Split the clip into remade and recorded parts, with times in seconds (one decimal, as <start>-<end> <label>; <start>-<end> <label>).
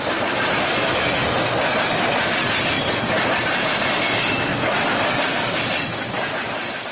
0.0-1.2 remade; 1.2-2.5 recorded; 2.5-4.5 remade; 4.5-5.4 recorded; 5.4-6.9 remade